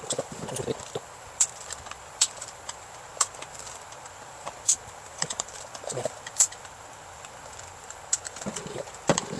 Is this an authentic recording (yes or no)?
no